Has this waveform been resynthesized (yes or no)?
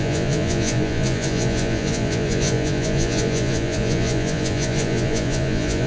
yes